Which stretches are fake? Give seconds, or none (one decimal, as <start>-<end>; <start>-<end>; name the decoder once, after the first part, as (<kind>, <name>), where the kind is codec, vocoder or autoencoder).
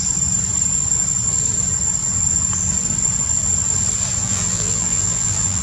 4.2-5.6 (vocoder, BigVGAN v2)